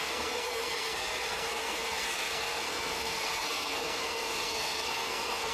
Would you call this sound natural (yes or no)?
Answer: no